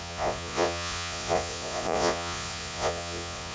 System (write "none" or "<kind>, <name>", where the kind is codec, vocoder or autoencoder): vocoder, Vocos